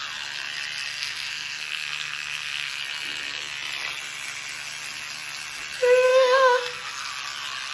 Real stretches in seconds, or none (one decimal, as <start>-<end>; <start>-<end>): 0.0-0.9; 2.8-6.1; 7.1-7.7